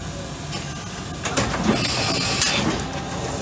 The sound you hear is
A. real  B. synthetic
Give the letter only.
A